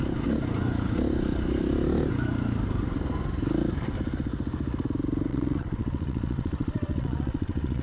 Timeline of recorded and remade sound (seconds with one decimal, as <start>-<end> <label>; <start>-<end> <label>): 0.0-5.3 recorded; 5.3-7.8 remade

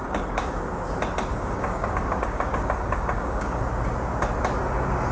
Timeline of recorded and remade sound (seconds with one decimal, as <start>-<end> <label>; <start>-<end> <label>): 0.0-0.6 remade; 0.6-1.3 recorded; 1.3-3.6 remade; 3.6-5.1 recorded

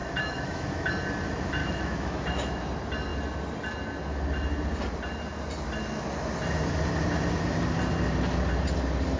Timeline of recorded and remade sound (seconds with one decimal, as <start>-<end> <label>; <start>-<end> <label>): 0.0-0.9 remade; 0.9-1.6 recorded; 1.6-2.6 remade; 2.6-9.2 recorded